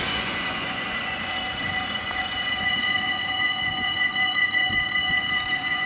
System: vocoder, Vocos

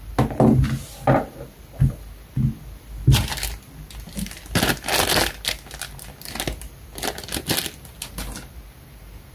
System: none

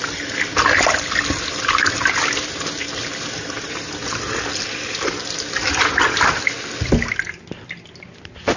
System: none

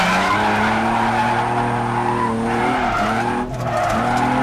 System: none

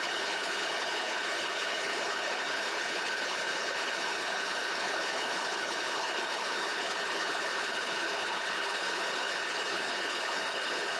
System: codec, HILCodec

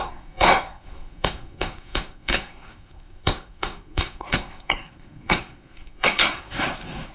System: codec, SNAC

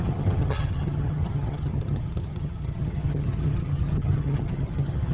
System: vocoder, HiFi-GAN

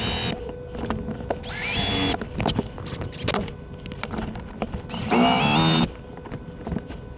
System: none